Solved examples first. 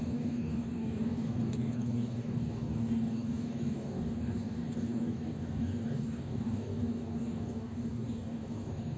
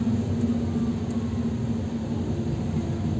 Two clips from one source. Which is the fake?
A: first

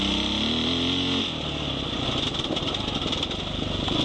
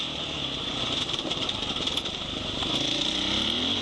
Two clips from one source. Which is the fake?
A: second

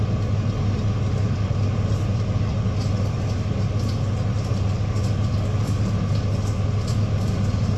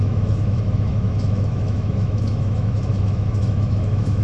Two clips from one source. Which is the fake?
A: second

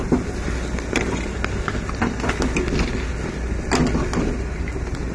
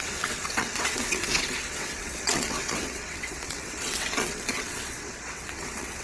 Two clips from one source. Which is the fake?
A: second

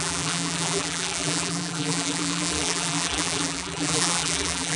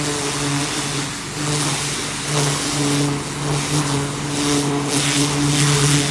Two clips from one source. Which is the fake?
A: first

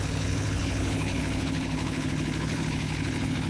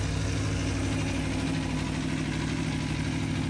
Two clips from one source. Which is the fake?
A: first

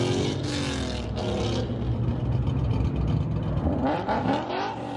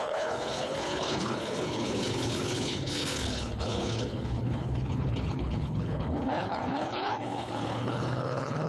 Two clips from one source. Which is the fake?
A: second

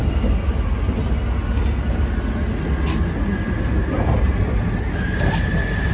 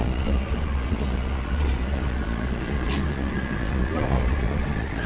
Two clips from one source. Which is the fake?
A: second